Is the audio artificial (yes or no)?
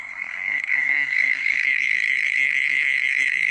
yes